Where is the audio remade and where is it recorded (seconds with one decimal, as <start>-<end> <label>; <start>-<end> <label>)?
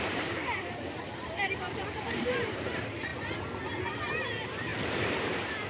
0.0-3.1 remade; 3.1-3.8 recorded; 3.8-5.7 remade